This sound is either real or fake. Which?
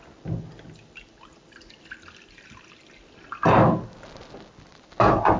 real